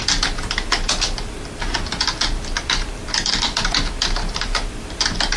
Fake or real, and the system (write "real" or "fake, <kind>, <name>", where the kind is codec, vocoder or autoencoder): real